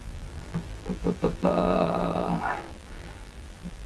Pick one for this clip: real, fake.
fake